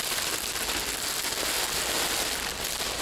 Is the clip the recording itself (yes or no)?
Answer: yes